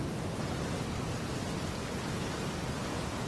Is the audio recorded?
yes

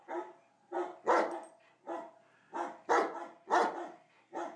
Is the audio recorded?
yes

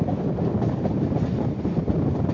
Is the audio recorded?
yes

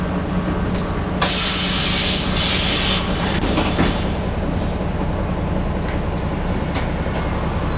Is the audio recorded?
yes